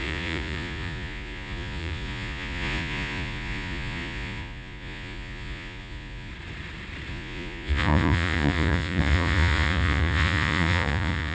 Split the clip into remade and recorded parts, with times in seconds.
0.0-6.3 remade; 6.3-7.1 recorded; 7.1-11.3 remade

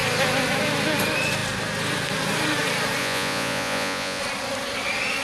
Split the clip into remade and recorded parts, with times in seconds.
0.0-3.0 recorded; 3.0-4.2 remade; 4.2-5.2 recorded

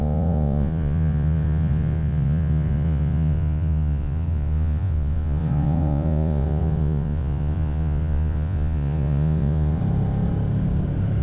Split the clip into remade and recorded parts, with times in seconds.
0.0-9.8 remade; 9.8-11.2 recorded

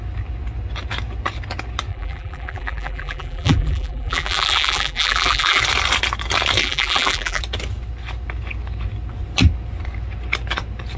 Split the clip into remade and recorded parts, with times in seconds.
0.0-1.9 recorded; 1.9-5.6 remade; 5.6-6.6 recorded; 6.6-7.4 remade; 7.4-11.0 recorded

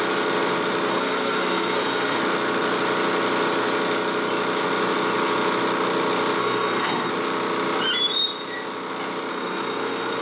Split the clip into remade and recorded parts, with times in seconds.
0.0-0.9 recorded; 0.9-2.2 remade; 2.2-6.4 recorded; 6.4-7.1 remade; 7.1-9.3 recorded; 9.3-10.2 remade

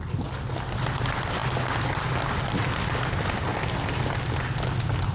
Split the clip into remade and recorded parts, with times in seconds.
0.0-5.1 recorded